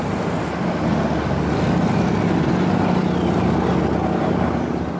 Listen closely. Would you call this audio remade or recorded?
recorded